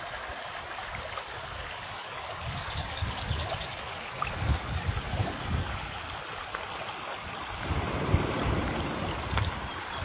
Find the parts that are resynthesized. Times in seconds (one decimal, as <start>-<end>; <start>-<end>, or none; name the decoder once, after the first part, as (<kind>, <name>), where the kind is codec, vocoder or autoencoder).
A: 1.3-5.9 (codec, DAC)